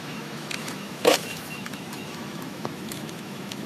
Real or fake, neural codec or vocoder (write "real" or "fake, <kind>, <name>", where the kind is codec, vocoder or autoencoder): fake, autoencoder, DAC-VAE